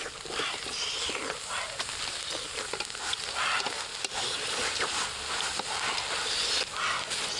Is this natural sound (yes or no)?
yes